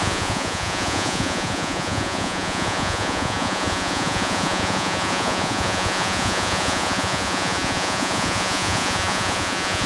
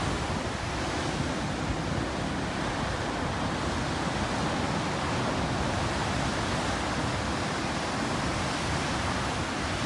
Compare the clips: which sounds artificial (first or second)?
first